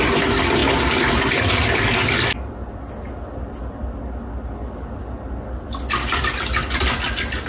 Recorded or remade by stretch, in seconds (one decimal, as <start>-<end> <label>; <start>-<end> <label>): 0.0-7.5 recorded